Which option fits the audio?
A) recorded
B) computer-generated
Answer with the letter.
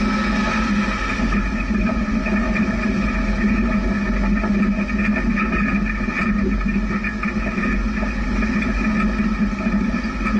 A